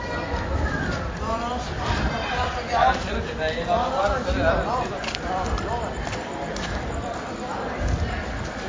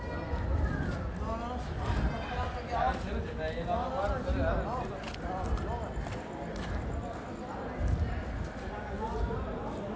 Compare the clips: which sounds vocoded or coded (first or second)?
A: first